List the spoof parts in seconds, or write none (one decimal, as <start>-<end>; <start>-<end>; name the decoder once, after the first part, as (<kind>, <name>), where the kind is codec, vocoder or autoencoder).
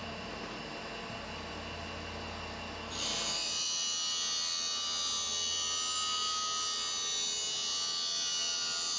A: none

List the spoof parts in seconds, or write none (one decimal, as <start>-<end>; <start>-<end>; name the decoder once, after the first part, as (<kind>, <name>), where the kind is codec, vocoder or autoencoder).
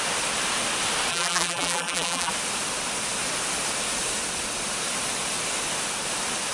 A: 1.1-2.3 (vocoder, BigVGAN v2)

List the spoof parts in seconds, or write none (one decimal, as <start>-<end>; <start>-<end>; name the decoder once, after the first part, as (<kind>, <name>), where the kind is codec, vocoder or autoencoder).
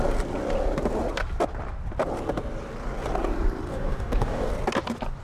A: 3.7-4.5 (codec, DAC)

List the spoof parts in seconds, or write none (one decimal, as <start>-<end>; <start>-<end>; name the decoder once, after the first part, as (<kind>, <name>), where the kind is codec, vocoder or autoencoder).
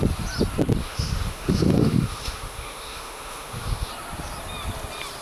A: 0.8-3.9 (autoencoder, DAC-VAE)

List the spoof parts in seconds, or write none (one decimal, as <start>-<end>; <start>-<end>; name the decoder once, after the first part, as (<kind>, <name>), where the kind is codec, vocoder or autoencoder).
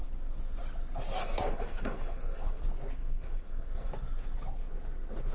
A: 1.2-2.6 (codec, SNAC); 3.0-3.9